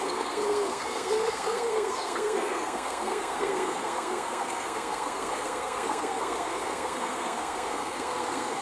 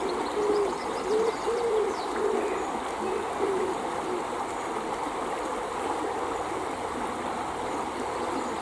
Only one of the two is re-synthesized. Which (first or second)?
first